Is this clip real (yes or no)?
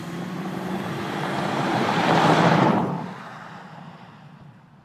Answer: no